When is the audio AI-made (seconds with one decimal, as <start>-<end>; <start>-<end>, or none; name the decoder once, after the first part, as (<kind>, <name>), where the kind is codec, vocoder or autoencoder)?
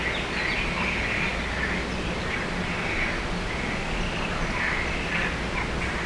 none